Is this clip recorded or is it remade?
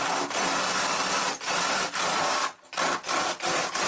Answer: remade